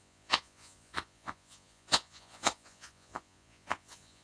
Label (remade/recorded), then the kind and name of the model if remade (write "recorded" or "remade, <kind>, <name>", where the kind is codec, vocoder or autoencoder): remade, vocoder, Vocos